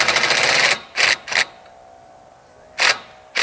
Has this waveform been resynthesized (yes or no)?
no